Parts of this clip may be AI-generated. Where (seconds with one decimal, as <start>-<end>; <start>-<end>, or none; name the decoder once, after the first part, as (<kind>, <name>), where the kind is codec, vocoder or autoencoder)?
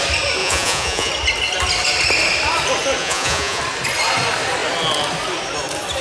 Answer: 0.4-1.1 (vocoder, Vocos); 3.0-3.6